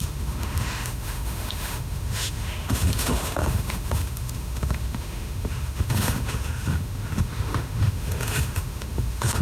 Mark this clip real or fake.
fake